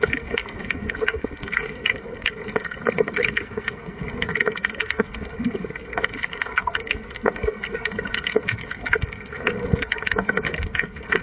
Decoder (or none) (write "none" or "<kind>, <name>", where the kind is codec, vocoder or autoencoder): codec, SNAC